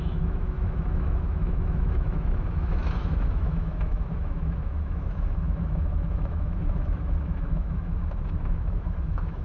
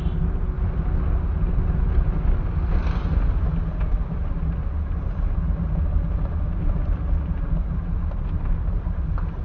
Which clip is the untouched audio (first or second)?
second